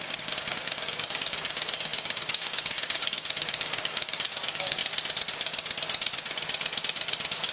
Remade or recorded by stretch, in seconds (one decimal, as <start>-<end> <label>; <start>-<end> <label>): 0.0-4.8 remade; 4.8-7.5 recorded

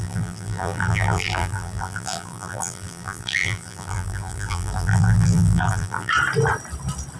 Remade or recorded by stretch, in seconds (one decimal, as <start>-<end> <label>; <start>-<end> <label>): 0.0-6.1 remade; 6.1-7.2 recorded

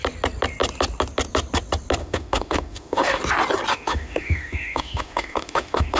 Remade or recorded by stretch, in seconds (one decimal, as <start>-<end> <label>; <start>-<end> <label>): 0.0-2.0 recorded; 2.0-3.2 remade; 3.2-3.7 recorded; 3.7-6.0 remade

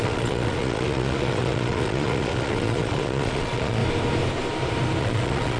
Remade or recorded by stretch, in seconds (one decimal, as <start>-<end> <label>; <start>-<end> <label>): 0.0-3.8 remade; 3.8-5.0 recorded; 5.0-5.6 remade